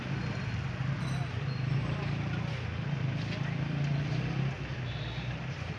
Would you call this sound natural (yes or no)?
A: yes